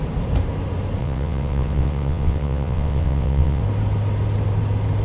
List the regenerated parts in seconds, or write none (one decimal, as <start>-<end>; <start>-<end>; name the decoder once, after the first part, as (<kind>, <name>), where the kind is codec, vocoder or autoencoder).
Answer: 1.0-3.6 (vocoder, WaveNeXt)